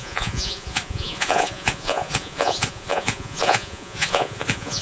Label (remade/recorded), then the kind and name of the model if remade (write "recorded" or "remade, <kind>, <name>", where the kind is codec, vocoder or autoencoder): remade, vocoder, Vocos